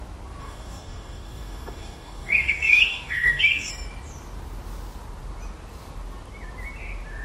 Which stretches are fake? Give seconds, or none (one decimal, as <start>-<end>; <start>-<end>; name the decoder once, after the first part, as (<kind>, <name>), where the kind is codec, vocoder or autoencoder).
0.4-3.7 (codec, DAC)